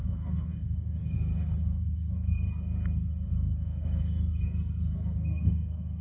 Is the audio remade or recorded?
remade